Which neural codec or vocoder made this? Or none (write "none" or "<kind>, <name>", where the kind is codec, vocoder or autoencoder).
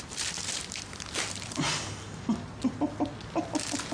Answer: none